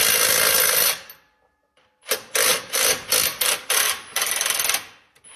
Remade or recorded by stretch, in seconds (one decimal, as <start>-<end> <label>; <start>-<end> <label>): 0.0-2.5 recorded; 2.5-4.5 remade; 4.5-5.4 recorded